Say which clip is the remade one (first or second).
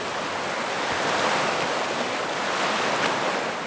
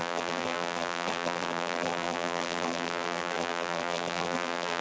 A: second